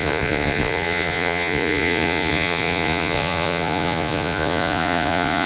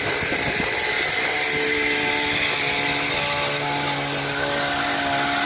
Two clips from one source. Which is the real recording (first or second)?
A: second